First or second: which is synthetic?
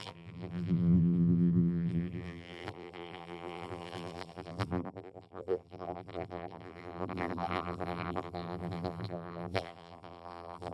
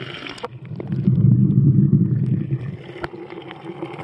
first